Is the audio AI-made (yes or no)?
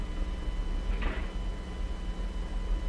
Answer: no